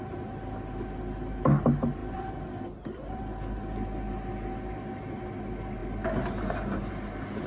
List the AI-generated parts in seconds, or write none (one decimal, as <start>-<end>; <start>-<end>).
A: 2.0-3.2